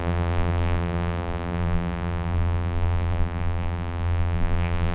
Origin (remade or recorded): remade